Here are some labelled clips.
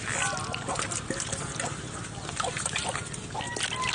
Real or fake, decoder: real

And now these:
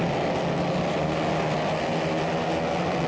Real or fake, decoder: real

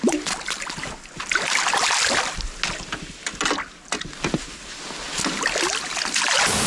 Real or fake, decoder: real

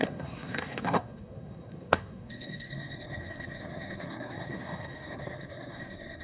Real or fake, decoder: fake, codec, SNAC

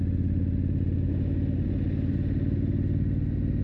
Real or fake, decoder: real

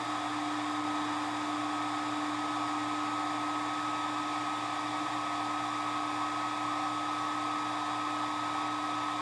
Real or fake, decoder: real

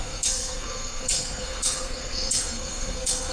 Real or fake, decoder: fake, codec, SNAC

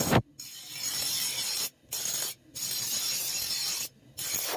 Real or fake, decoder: real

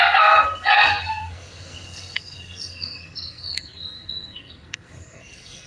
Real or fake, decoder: fake, codec, SNAC